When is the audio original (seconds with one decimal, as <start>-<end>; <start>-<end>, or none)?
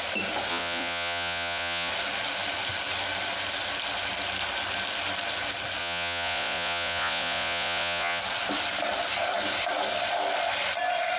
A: 0.0-0.5; 1.9-5.8; 8.2-11.2